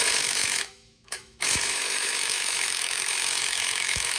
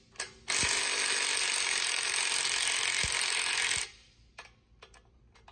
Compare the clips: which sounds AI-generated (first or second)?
first